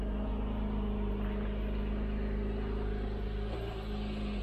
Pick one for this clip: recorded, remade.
recorded